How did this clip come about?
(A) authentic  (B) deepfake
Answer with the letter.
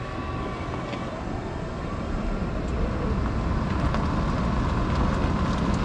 A